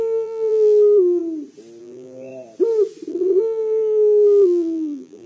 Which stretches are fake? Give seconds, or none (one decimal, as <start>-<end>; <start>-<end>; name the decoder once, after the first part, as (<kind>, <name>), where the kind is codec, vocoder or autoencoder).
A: 0.0-1.2 (vocoder, BigVGAN v2); 1.8-2.3; 3.1-5.3